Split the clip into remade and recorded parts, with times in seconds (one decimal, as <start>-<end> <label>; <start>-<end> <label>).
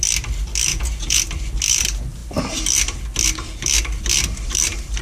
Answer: 0.0-0.7 recorded; 0.7-1.2 remade; 1.2-5.0 recorded